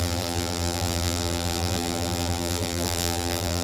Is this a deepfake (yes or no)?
yes